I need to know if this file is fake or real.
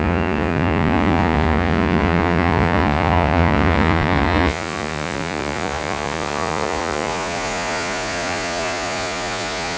fake